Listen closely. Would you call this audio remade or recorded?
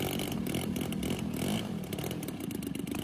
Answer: recorded